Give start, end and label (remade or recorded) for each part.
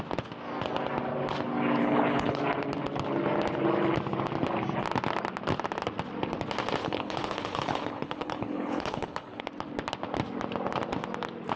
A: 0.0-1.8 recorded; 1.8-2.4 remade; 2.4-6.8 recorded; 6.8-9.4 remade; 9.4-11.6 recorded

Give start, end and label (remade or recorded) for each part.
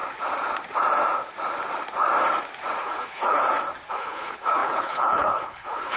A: 0.0-2.8 recorded; 2.8-3.4 remade; 3.4-3.9 recorded; 3.9-6.0 remade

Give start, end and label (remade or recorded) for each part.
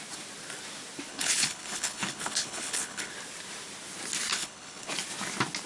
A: 0.0-1.1 recorded; 1.1-3.1 remade; 3.1-4.3 recorded; 4.3-4.9 remade; 4.9-5.7 recorded